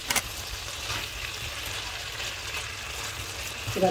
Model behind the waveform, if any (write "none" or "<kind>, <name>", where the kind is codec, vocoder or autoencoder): none